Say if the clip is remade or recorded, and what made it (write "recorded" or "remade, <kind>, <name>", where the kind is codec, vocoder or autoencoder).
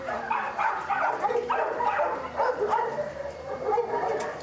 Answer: remade, vocoder, BigVGAN v2